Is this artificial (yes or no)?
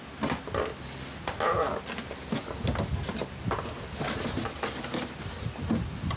no